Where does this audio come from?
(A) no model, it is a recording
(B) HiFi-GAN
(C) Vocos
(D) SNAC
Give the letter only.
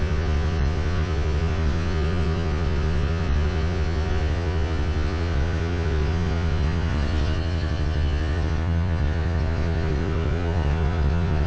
C